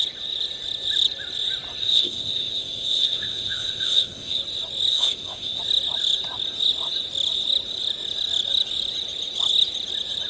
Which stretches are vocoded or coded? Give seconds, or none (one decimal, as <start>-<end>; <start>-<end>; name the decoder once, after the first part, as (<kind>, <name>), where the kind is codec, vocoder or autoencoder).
1.8-4.4 (codec, ZipCodec); 4.9-5.6